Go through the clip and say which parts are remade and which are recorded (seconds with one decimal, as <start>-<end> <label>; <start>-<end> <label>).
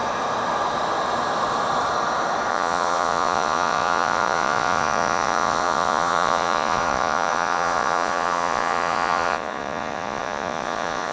0.0-2.5 recorded; 2.5-11.1 remade